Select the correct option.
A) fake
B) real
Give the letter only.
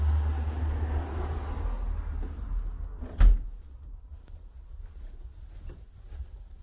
B